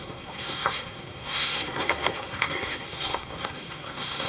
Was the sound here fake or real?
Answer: fake